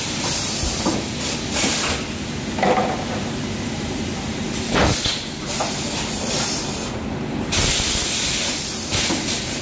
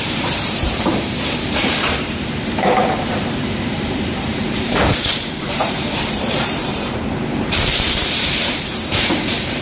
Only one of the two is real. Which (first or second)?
first